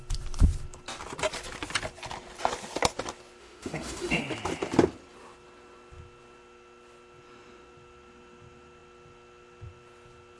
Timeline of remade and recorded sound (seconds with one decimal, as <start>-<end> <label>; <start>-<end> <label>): 0.0-3.4 recorded; 3.4-4.2 remade; 4.2-10.4 recorded